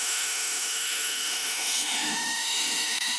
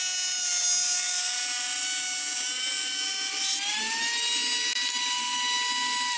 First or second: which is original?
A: second